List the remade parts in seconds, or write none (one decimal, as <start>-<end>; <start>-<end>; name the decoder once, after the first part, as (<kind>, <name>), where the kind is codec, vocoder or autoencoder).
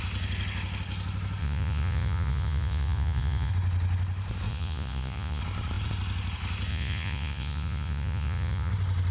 1.4-3.5 (vocoder, Vocos); 4.5-5.4; 6.7-8.7